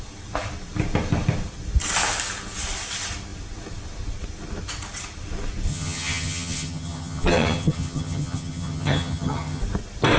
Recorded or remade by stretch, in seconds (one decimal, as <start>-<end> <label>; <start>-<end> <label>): 0.0-5.7 recorded; 5.7-9.6 remade; 9.6-10.2 recorded